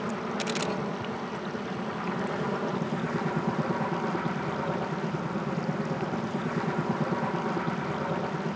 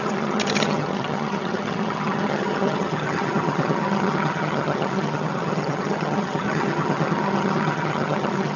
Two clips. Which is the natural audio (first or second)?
first